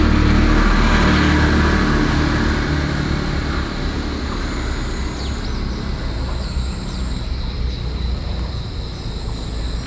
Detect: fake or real real